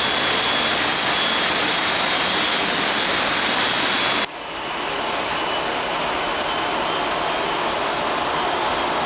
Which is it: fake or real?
real